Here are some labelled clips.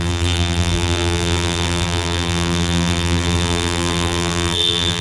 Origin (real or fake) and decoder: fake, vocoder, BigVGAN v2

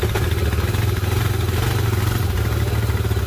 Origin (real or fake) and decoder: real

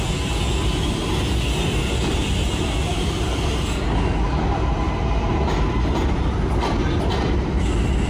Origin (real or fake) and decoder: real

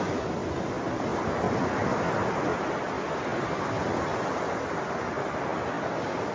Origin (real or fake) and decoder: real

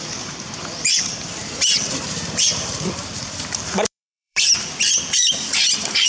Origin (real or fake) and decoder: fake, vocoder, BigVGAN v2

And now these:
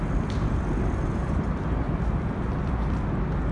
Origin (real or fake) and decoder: real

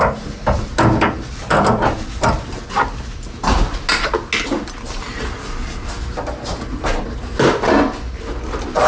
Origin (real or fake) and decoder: real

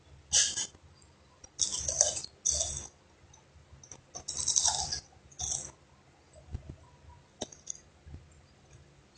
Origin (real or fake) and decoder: real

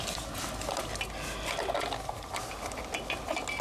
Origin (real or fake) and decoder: real